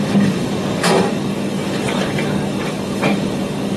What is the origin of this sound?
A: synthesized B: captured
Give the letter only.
A